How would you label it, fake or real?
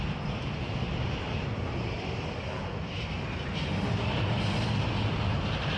real